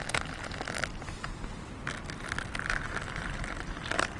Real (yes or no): yes